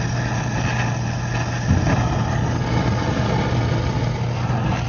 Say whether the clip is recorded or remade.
recorded